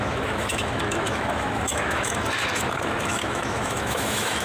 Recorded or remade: remade